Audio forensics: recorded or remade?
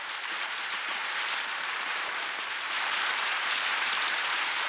remade